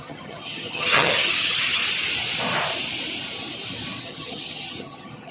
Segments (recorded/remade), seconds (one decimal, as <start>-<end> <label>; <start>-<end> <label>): 0.0-1.8 remade; 1.8-4.0 recorded; 4.0-5.3 remade